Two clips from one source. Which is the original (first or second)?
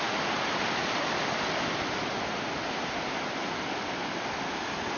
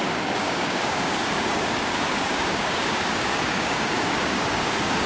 first